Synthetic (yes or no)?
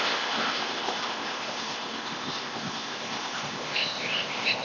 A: yes